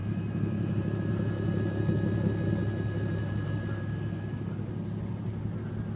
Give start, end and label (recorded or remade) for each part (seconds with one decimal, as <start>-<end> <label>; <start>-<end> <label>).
0.0-6.0 recorded